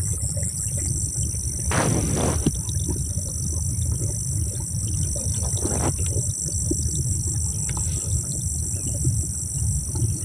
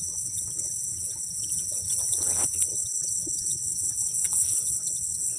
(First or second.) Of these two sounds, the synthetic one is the second